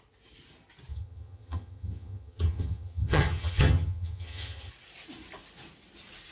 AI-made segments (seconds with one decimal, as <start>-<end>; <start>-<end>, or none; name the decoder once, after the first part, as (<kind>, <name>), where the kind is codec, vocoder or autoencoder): 0.9-4.7 (vocoder, HiFi-GAN)